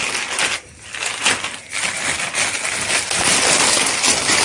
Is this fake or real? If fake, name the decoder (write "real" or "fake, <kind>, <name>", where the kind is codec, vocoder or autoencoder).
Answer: real